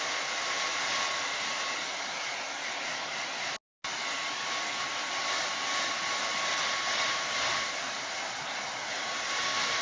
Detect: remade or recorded recorded